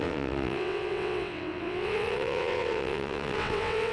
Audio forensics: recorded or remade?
remade